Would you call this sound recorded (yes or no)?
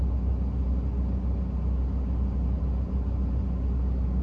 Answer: yes